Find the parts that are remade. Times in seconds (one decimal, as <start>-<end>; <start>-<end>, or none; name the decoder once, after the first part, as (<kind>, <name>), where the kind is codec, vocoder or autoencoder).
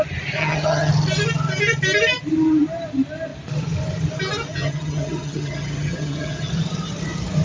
0.4-0.9 (vocoder, HiFi-GAN); 4.5-6.5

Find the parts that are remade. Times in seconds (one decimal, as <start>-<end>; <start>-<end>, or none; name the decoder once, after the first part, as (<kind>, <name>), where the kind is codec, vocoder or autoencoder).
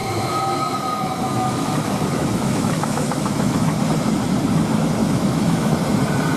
0.0-3.8 (autoencoder, DAC-VAE); 5.0-5.7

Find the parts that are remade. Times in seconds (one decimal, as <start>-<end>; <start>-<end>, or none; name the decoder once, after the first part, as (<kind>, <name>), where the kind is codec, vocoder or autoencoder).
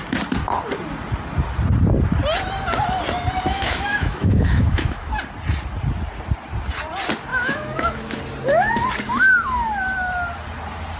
3.5-5.1 (autoencoder, DAC-VAE); 7.3-8.2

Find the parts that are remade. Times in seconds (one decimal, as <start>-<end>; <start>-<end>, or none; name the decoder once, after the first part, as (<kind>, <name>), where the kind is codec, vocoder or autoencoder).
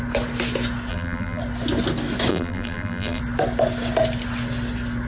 0.9-1.4 (vocoder, BigVGAN v2); 2.3-3.2